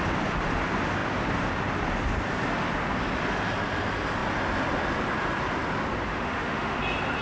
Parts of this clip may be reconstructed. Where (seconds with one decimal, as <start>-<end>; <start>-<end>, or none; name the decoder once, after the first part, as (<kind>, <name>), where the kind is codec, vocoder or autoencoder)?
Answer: 6.1-6.8 (autoencoder, DAC-VAE)